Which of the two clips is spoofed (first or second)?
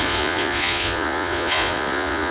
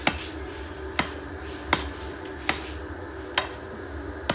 first